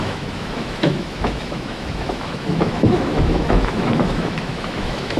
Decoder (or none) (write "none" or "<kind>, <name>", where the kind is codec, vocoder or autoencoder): autoencoder, DAC-VAE